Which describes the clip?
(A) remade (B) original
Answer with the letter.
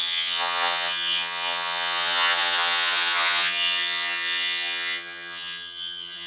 A